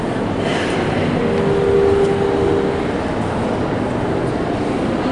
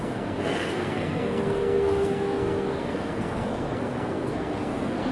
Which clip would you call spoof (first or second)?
second